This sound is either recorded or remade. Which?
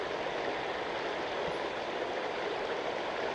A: recorded